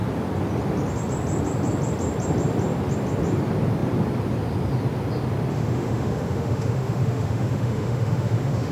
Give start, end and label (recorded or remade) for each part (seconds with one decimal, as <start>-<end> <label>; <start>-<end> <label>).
0.0-5.5 recorded; 5.5-8.7 remade